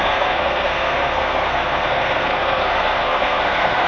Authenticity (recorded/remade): remade